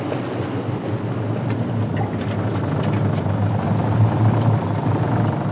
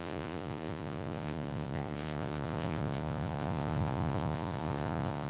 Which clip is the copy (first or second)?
second